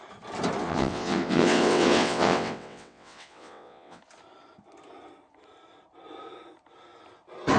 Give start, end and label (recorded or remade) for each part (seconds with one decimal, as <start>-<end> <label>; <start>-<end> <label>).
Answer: 0.0-0.6 recorded; 0.6-4.0 remade; 4.0-7.6 recorded